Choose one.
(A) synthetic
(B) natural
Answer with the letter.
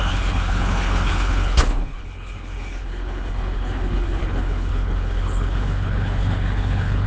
A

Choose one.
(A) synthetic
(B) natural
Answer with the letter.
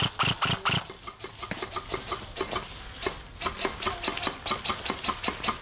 B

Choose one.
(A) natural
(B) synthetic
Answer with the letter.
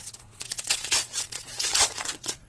B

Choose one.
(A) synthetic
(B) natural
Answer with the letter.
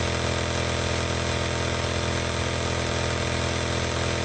B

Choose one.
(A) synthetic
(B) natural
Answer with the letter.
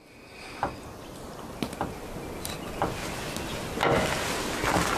B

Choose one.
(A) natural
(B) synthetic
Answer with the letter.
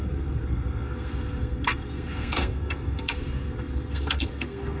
B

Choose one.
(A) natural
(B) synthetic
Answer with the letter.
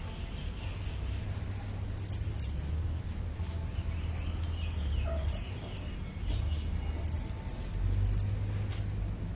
A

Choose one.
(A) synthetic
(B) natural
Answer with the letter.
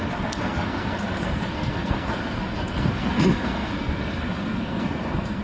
A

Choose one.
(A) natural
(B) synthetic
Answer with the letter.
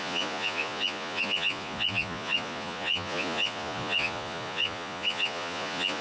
B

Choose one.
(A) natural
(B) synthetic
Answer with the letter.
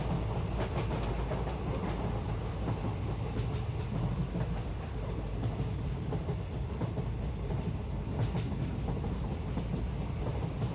A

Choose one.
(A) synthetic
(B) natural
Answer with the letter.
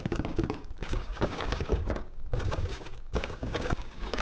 A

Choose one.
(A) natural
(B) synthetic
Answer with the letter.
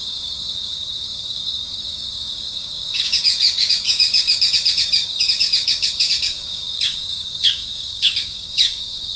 B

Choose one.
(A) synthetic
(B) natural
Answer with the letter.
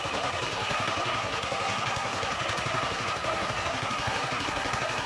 A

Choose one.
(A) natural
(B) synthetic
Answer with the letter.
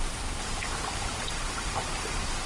A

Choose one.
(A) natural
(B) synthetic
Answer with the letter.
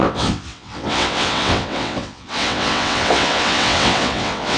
B